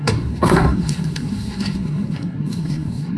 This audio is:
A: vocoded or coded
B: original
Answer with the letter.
A